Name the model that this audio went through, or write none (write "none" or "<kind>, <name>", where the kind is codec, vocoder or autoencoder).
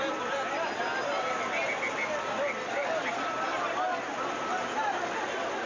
none